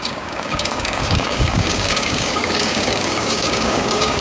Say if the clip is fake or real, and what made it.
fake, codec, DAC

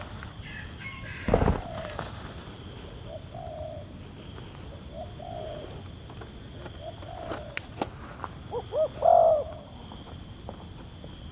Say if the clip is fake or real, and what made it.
real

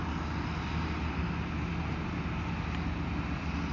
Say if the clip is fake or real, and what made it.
real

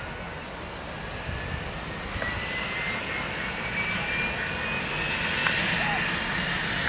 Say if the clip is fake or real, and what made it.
real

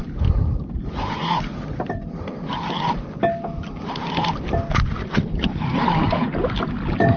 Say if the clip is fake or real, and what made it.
real